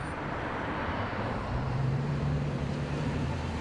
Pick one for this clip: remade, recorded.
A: remade